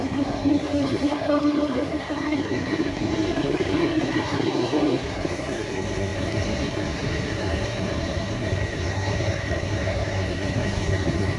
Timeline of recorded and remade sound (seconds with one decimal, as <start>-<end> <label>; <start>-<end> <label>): 0.0-11.4 remade